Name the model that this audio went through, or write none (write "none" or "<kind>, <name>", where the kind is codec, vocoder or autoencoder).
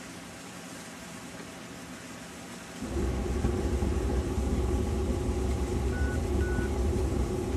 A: none